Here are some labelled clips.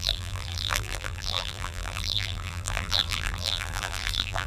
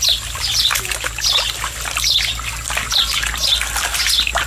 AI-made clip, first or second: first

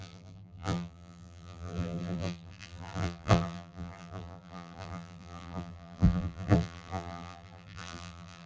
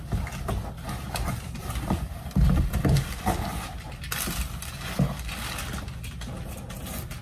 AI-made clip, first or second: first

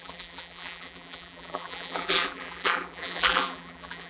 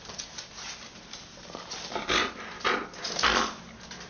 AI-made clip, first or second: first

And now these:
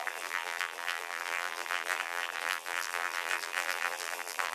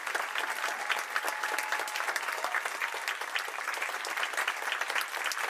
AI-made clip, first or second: first